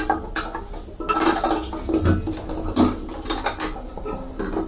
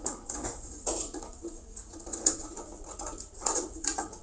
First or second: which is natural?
first